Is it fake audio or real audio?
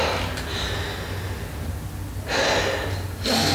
real